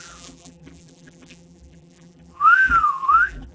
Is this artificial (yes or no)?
yes